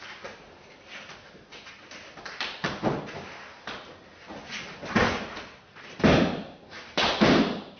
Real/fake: real